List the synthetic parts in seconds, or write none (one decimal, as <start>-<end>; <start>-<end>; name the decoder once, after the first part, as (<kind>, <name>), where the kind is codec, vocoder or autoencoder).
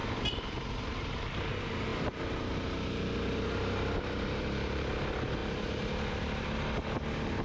none